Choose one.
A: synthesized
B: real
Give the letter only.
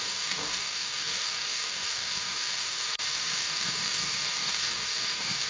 A